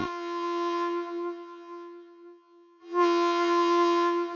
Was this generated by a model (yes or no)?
yes